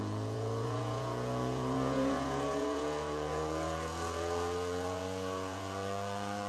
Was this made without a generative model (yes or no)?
no